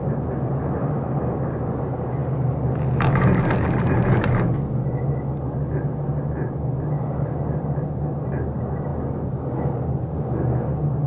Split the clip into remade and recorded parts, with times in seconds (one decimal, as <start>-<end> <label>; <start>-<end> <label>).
0.0-11.1 recorded